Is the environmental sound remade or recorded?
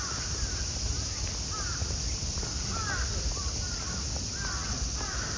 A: recorded